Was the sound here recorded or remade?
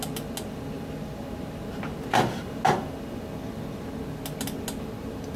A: recorded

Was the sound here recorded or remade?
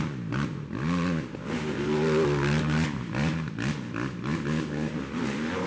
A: recorded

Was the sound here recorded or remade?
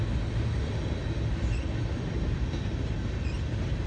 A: recorded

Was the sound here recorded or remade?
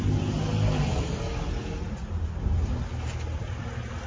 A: recorded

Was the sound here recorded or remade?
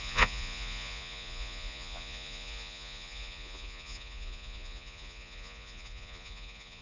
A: remade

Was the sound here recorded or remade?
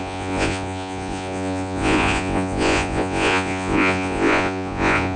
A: remade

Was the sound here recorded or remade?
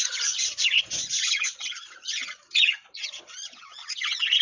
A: remade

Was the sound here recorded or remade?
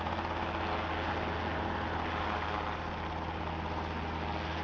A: recorded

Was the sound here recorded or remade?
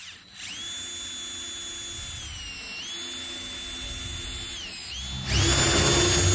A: recorded